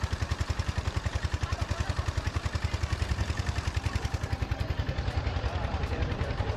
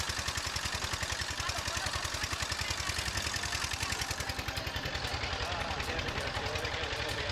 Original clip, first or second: second